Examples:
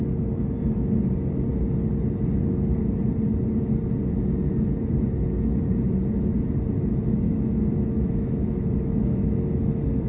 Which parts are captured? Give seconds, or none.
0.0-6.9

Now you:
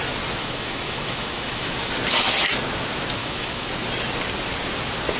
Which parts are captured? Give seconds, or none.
0.0-0.4; 1.9-3.2; 3.7-5.2

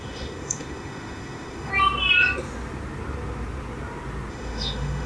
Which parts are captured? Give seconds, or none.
1.7-4.3

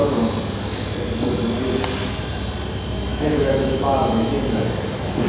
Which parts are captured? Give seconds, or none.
0.0-3.1; 4.3-5.3